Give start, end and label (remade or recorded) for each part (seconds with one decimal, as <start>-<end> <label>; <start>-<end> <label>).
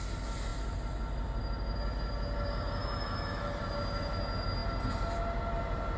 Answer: 0.0-2.8 recorded; 2.8-3.6 remade; 3.6-6.0 recorded